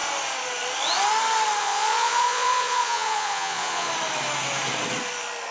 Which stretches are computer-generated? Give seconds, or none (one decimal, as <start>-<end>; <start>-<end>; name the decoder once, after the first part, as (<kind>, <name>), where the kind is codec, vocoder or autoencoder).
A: 1.6-3.9 (vocoder, Vocos)